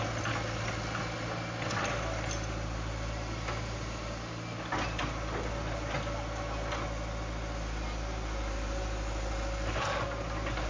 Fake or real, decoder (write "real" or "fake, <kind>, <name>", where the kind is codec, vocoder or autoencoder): real